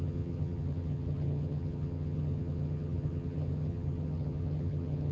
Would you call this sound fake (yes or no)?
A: yes